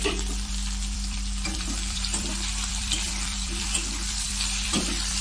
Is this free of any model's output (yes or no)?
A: no